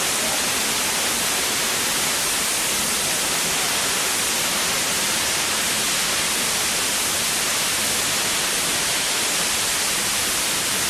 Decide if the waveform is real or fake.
real